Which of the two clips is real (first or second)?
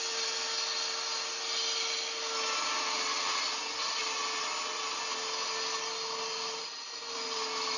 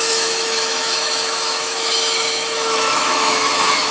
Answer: first